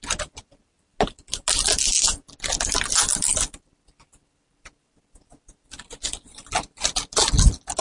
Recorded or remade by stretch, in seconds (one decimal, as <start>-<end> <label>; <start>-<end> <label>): 0.0-7.8 recorded